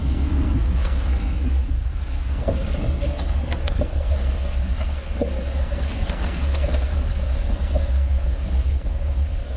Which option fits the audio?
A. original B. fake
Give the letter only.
B